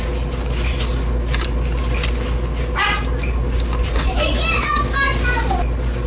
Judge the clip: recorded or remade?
recorded